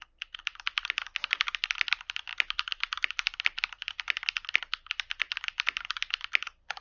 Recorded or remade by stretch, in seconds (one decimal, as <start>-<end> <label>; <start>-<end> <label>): 0.0-2.3 recorded; 2.3-4.6 remade; 4.6-6.8 recorded